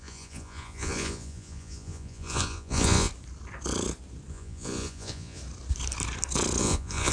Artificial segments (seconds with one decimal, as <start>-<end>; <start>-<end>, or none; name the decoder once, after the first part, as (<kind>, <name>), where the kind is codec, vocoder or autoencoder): 0.0-3.1 (vocoder, Vocos); 4.3-5.4; 6.6-7.1